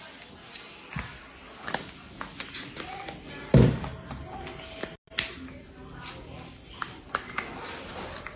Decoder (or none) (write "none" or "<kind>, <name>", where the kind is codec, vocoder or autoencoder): none